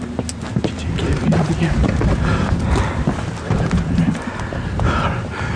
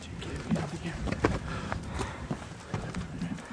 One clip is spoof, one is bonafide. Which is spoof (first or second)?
second